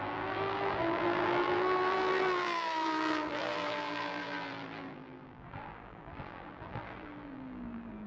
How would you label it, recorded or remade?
remade